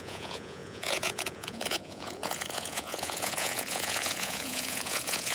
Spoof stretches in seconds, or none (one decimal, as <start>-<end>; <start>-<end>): 0.0-5.3